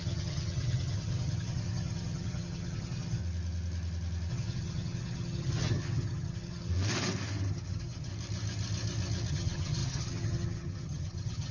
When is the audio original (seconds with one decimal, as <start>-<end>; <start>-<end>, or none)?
3.2-4.3; 6.7-7.5; 8.1-9.3